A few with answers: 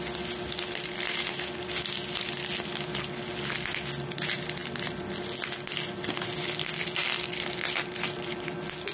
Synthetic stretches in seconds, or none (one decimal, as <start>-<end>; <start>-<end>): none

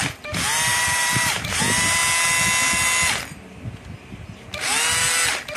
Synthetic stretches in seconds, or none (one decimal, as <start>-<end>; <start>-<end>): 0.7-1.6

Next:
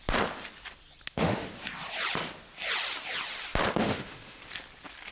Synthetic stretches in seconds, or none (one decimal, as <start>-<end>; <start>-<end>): 1.1-1.5; 3.8-4.4

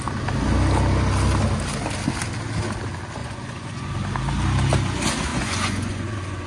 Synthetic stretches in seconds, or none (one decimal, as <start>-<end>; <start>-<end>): 3.2-3.9; 5.3-6.5

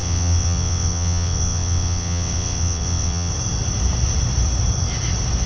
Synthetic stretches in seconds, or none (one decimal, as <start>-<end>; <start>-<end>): 0.0-3.3

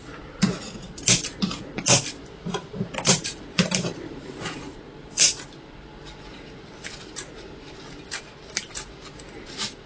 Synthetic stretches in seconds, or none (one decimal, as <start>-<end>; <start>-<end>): 2.7-5.3